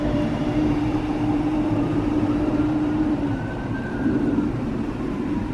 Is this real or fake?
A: fake